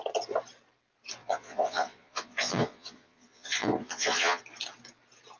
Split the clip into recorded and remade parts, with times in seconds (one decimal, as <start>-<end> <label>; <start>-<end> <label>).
0.0-1.2 recorded; 1.2-4.4 remade; 4.4-5.4 recorded